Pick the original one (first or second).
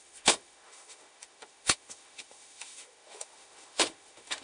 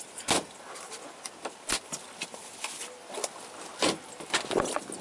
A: second